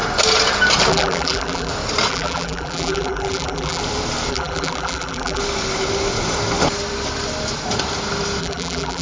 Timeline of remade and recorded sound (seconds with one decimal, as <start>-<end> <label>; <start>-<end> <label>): 0.0-0.9 recorded; 0.9-1.7 remade; 1.7-2.1 recorded; 2.1-3.8 remade; 3.8-4.3 recorded; 4.3-5.4 remade; 5.4-8.4 recorded; 8.4-9.0 remade